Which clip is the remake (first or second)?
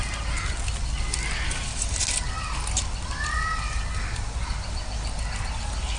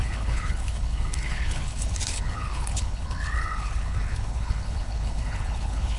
second